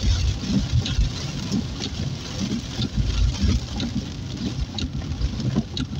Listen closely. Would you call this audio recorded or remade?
recorded